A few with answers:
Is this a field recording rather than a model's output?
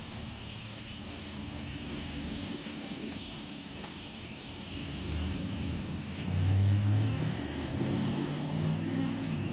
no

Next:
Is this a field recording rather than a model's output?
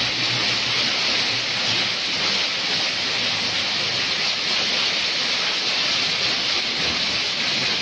yes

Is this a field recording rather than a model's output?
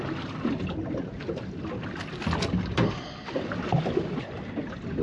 yes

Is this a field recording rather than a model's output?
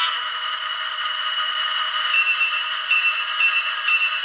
no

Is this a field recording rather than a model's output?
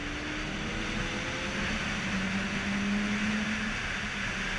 yes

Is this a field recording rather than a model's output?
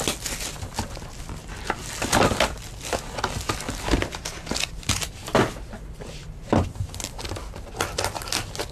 yes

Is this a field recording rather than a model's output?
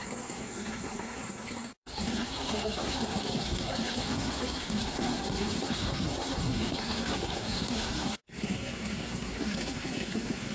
no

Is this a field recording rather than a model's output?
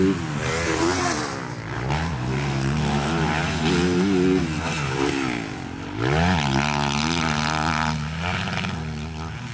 yes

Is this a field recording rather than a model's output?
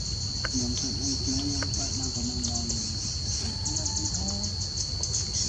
yes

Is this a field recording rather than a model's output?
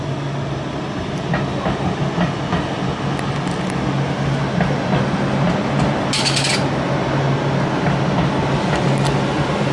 yes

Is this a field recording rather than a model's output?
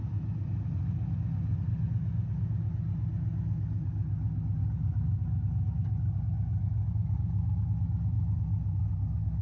yes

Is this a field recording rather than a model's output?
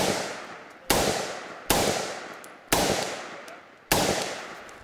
yes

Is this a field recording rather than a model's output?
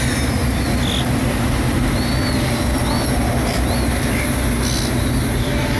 yes